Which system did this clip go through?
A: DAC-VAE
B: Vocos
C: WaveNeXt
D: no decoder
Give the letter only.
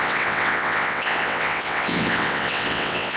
C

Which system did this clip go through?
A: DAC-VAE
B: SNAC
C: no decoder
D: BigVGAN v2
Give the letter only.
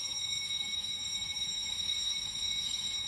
A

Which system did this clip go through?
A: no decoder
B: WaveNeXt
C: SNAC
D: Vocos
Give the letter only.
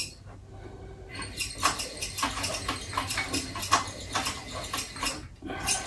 A